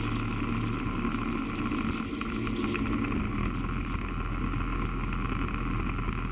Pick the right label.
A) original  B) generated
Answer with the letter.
A